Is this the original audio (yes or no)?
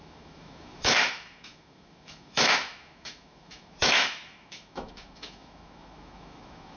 no